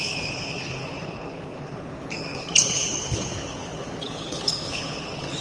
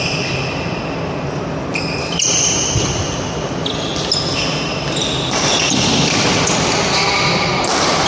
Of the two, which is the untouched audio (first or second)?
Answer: second